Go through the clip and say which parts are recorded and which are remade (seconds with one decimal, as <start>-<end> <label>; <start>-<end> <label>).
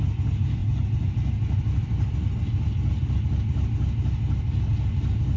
0.0-0.6 recorded; 0.6-3.2 remade; 3.2-5.4 recorded